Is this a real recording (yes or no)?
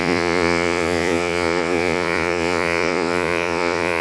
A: no